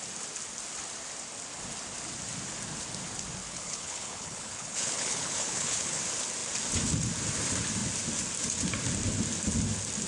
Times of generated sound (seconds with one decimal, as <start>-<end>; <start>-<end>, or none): 3.4-6.0